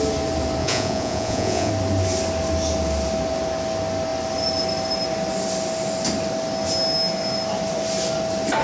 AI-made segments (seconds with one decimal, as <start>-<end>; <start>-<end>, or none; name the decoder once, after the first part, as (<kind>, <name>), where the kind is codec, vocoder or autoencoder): 0.6-1.7 (vocoder, Vocos)